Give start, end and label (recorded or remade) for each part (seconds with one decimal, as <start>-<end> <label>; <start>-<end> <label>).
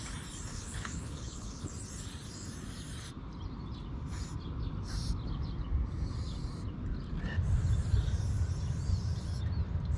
0.0-0.5 recorded; 0.5-1.7 remade; 1.7-10.0 recorded